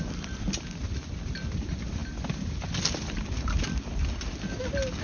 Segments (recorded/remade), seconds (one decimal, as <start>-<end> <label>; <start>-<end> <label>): 0.0-5.0 recorded